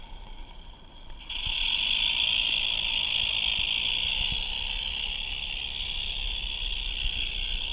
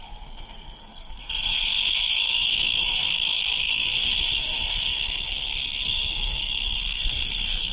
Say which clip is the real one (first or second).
first